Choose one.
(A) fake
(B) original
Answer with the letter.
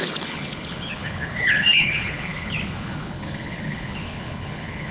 A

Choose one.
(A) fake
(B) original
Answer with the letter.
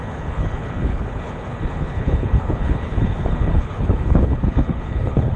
A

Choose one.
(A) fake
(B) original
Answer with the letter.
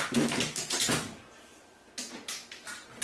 B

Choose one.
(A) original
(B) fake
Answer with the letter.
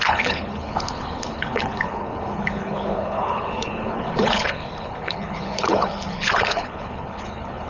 B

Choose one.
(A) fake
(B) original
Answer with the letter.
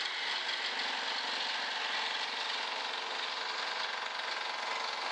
B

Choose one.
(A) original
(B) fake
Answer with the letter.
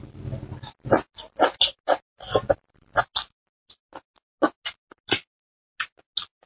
A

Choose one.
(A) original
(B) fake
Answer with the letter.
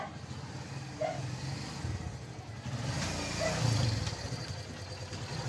A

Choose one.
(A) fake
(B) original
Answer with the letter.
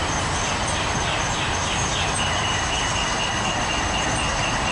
B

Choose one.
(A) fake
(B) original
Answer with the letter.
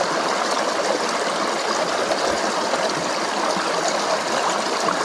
B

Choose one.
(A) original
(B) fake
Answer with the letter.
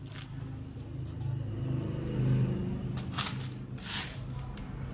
A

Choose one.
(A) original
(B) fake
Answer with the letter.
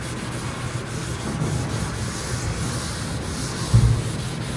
A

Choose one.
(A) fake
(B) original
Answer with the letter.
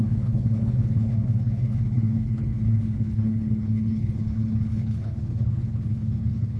A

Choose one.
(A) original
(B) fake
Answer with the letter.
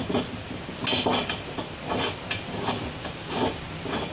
A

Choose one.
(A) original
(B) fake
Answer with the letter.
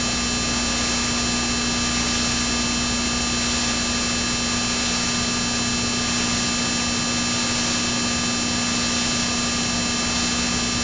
A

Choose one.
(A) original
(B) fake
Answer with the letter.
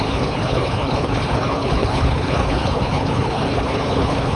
B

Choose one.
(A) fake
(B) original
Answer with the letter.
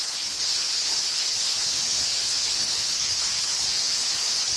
A